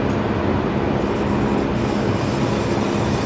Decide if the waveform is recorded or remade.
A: recorded